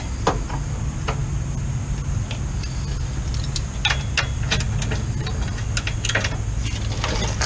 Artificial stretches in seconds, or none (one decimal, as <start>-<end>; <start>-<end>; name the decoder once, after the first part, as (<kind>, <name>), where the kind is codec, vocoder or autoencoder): none